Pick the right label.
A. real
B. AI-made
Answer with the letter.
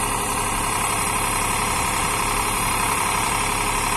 B